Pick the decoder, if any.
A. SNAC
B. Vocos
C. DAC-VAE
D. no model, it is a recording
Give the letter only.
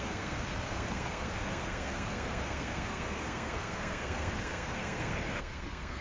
A